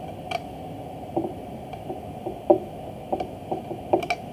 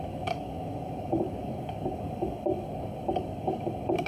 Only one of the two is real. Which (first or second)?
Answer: first